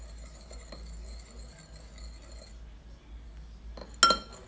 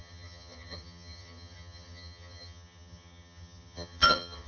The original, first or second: first